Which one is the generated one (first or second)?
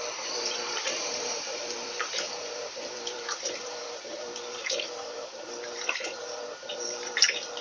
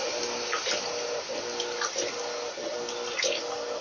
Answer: first